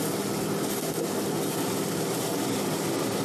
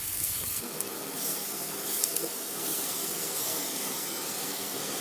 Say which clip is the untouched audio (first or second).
first